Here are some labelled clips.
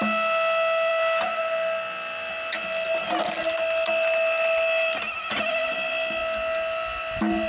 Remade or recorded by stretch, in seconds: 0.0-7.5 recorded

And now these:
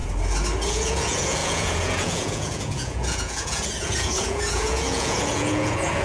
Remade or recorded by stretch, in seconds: 0.0-0.7 recorded; 0.7-6.0 remade